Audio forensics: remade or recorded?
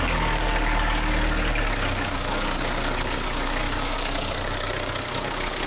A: remade